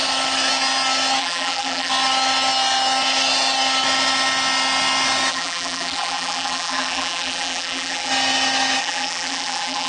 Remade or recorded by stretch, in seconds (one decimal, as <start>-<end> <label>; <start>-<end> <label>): 0.0-1.2 recorded; 1.2-1.9 remade; 1.9-5.3 recorded; 5.3-8.1 remade; 8.1-8.8 recorded; 8.8-9.9 remade